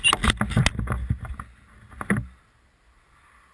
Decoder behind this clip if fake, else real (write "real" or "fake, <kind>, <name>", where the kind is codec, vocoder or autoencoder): real